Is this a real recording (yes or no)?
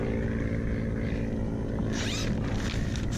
yes